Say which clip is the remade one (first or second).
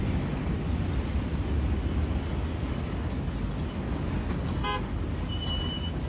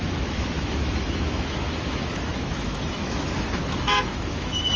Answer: second